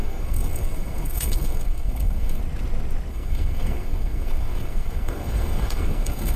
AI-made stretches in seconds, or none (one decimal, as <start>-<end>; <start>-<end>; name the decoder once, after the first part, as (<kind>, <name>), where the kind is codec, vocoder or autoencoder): 0.0-2.4 (codec, SNAC); 3.1-6.4